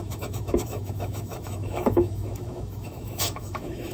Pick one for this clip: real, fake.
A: fake